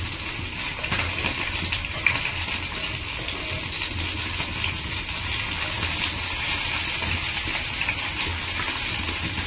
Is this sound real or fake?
real